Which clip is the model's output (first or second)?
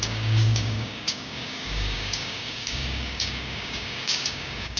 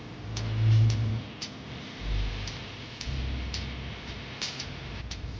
first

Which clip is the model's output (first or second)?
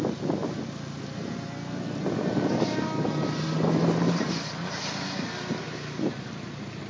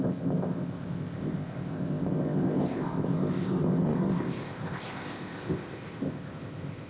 second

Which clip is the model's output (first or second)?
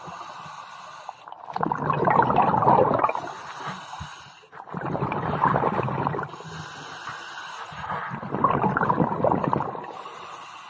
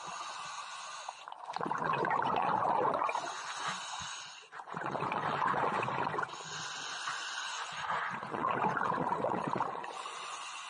second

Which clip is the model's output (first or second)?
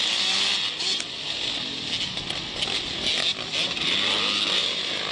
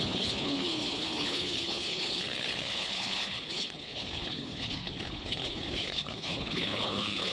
second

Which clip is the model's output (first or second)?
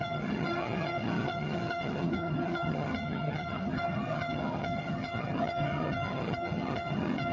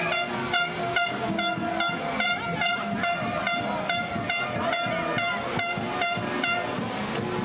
first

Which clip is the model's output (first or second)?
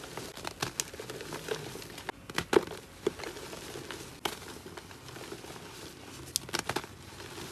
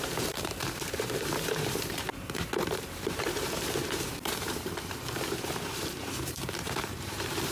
second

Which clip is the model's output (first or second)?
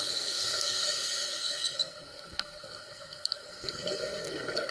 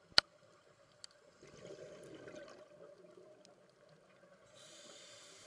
first